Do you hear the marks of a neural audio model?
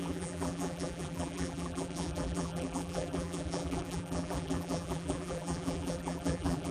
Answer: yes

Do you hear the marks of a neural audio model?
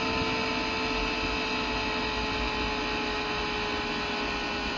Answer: no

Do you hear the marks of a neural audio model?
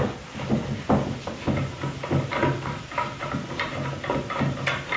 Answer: no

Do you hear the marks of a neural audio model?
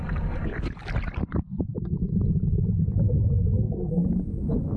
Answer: no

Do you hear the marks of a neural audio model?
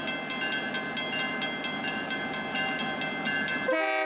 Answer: no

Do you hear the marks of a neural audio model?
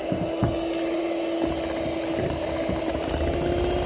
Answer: no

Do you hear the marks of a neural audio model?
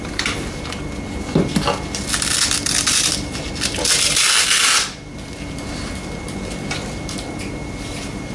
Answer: yes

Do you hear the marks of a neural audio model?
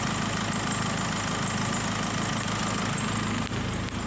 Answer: no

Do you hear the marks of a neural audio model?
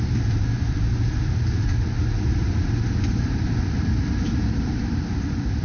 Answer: yes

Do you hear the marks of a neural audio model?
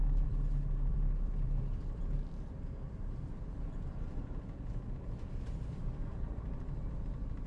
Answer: yes